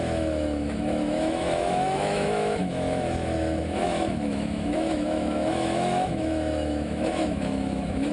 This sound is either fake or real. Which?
fake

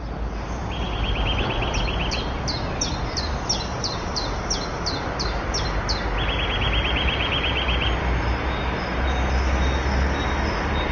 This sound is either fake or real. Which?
real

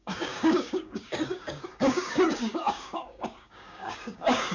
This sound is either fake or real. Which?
fake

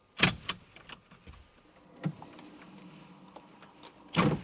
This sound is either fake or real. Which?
real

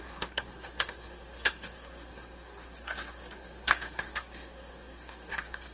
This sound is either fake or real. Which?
fake